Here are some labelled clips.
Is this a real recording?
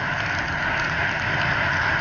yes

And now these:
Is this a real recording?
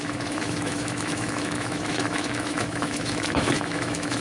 no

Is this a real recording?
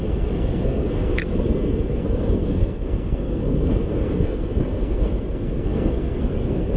no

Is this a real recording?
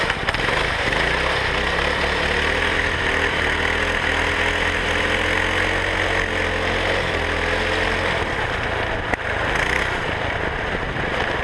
yes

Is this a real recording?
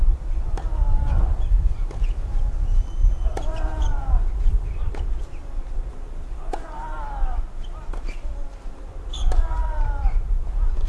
no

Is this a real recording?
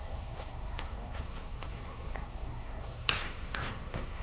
no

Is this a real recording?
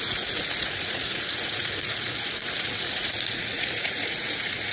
no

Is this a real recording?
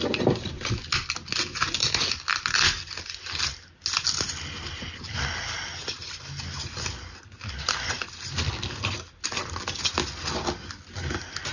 yes